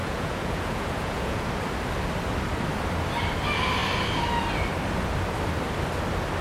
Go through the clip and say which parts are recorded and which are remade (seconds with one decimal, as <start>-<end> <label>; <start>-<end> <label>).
0.0-1.5 remade; 1.5-6.4 recorded